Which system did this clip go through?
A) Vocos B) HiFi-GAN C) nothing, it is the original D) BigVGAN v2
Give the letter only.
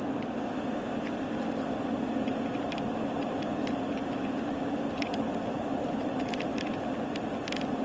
C